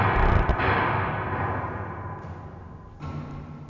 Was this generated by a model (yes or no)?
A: no